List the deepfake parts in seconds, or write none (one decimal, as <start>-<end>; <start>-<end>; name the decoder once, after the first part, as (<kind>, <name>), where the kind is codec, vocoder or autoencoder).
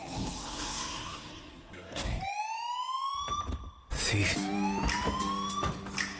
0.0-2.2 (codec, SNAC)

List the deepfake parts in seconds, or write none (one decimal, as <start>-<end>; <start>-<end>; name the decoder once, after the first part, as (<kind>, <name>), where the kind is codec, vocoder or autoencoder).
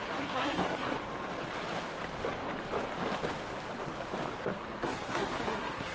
0.0-0.9 (codec, SNAC); 4.4-5.9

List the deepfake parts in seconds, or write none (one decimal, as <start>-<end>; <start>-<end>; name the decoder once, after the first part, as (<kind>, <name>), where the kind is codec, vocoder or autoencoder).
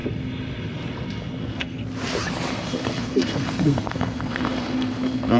1.4-1.8 (codec, SNAC); 2.5-5.4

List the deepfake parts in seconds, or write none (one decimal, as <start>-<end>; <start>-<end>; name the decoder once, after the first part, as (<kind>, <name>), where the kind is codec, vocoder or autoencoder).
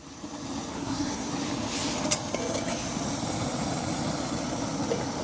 0.7-1.3 (codec, SNAC)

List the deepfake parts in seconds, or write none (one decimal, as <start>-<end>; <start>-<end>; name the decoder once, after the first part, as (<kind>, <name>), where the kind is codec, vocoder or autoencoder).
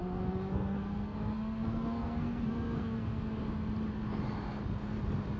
0.0-3.2 (codec, SNAC)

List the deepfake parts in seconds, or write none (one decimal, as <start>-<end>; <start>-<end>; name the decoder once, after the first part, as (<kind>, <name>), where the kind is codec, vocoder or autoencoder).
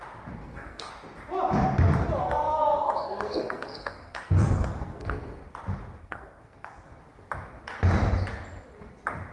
0.4-0.9 (codec, SNAC); 2.2-5.4; 6.0-7.0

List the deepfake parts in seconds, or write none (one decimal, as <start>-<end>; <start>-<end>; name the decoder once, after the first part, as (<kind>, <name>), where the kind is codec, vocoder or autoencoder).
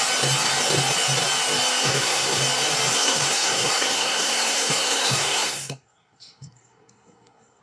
1.8-2.4 (codec, SNAC); 2.9-7.6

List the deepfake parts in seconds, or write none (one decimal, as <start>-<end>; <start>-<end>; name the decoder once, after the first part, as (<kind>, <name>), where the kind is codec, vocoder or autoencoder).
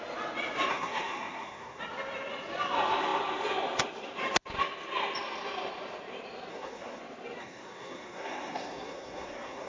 0.7-1.8 (codec, SNAC); 6.5-7.0; 7.4-9.7